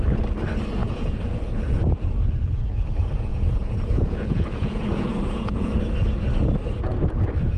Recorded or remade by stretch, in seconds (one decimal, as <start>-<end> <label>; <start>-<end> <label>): 0.0-0.8 recorded; 0.8-2.3 remade; 2.3-3.3 recorded; 3.3-5.8 remade; 5.8-7.6 recorded